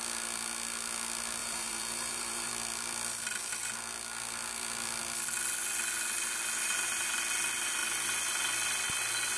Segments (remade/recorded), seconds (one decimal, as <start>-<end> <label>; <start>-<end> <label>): 0.0-1.4 recorded; 1.4-2.5 remade; 2.5-9.4 recorded